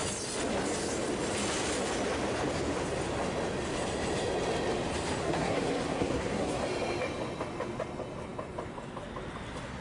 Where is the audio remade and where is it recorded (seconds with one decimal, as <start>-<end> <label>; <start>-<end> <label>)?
0.0-5.2 recorded; 5.2-6.6 remade; 6.6-9.8 recorded